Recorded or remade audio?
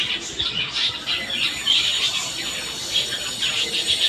recorded